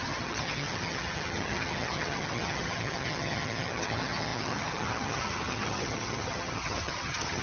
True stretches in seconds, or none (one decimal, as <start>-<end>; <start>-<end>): none